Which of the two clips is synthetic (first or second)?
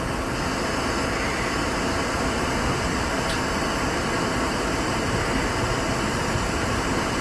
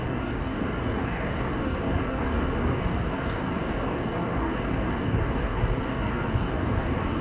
second